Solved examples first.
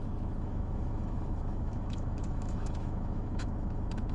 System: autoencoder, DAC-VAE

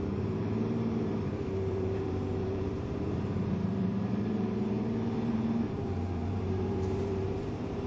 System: vocoder, BigVGAN v2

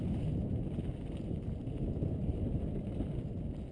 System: none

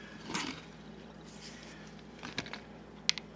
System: none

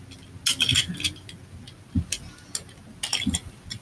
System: none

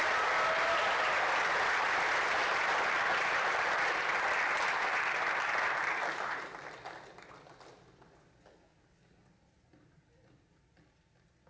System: none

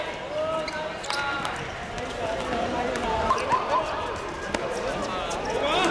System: none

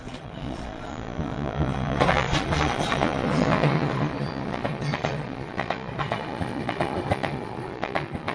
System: vocoder, Vocos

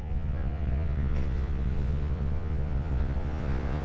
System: vocoder, Vocos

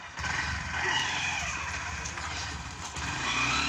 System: vocoder, BigVGAN v2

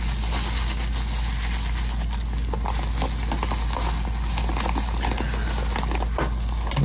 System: none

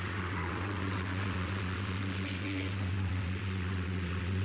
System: vocoder, WaveNeXt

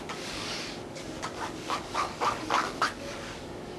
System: codec, DAC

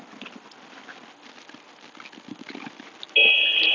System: none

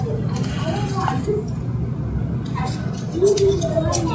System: none